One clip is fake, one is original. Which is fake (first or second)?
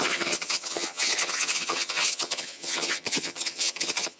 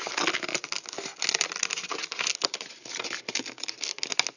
first